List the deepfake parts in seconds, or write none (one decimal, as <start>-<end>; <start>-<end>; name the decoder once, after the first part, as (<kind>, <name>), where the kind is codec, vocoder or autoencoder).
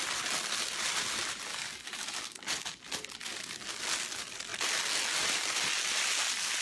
1.5-3.8 (codec, DAC)